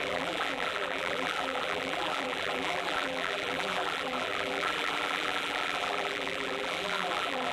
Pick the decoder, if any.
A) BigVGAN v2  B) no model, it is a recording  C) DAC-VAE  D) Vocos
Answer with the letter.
A